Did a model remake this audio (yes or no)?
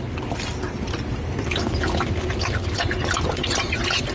no